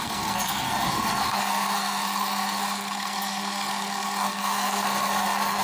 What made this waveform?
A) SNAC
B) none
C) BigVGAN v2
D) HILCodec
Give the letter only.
A